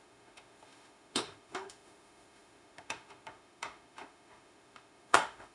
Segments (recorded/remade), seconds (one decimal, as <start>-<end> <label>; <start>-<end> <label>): 0.0-5.5 remade